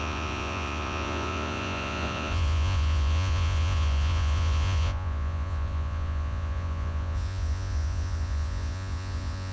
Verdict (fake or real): fake